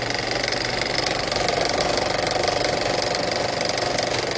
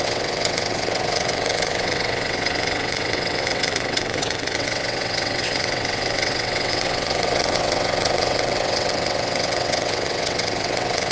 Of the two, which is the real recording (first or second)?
first